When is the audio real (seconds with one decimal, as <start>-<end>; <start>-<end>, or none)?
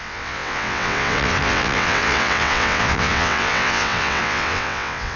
none